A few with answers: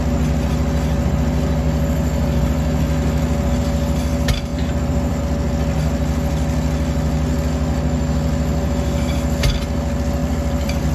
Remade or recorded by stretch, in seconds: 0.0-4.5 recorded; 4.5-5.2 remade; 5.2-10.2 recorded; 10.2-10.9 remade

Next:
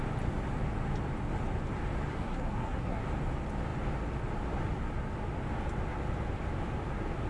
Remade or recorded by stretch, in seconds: 0.0-2.1 recorded; 2.1-3.0 remade; 3.0-7.3 recorded

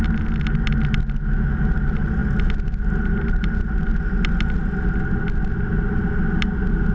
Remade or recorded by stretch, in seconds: 0.0-6.9 recorded

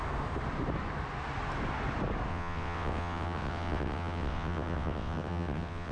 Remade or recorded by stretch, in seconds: 0.0-2.3 recorded; 2.3-5.9 remade

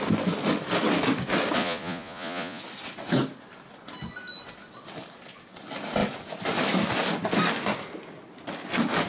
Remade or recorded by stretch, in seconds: 0.0-1.6 recorded; 1.6-2.6 remade; 2.6-9.1 recorded

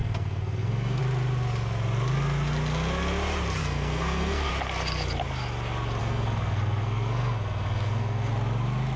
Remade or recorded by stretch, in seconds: 0.0-1.0 remade; 1.0-3.6 recorded; 3.6-4.5 remade; 4.5-6.0 recorded; 6.0-8.3 remade; 8.3-9.0 recorded

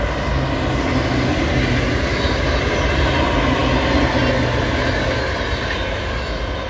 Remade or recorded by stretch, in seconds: 0.0-6.7 recorded